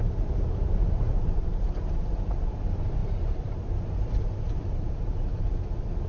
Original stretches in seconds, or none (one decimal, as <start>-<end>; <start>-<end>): 5.3-6.1